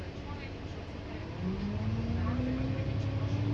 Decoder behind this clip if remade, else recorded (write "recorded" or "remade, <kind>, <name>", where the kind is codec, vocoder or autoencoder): recorded